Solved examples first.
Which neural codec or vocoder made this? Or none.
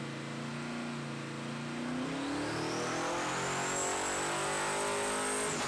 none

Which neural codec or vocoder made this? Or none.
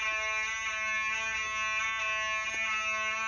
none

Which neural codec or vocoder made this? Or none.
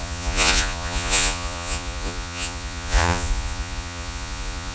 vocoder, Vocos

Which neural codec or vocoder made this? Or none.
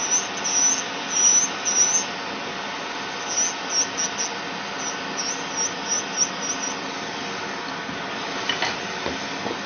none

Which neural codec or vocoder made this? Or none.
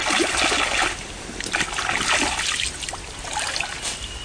none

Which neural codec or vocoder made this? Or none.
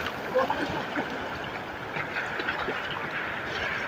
none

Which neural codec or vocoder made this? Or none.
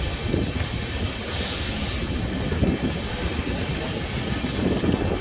none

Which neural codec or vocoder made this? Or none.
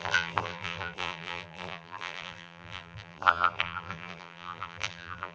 vocoder, BigVGAN v2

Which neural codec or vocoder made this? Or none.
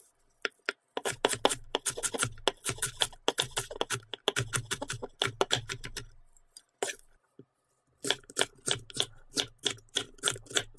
none